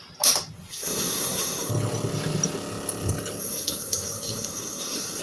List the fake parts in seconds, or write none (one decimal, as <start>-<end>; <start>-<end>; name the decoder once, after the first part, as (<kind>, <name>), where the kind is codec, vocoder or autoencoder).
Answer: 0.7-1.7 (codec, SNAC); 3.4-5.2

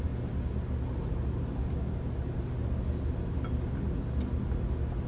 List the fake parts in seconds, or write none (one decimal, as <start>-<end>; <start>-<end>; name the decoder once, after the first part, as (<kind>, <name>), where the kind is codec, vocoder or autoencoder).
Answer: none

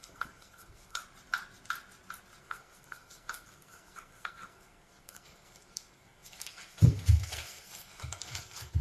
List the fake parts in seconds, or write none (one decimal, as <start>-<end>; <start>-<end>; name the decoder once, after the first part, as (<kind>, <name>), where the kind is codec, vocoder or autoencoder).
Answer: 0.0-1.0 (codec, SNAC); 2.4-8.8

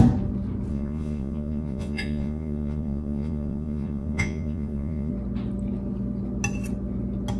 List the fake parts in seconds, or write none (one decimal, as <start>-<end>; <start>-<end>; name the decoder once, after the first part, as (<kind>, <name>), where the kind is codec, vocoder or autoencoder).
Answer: 0.7-5.1 (vocoder, Vocos)

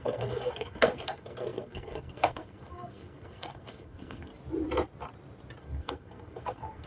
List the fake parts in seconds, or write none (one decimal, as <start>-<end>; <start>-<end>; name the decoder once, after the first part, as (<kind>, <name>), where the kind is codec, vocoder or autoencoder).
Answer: 0.0-4.3 (codec, SNAC); 5.6-6.9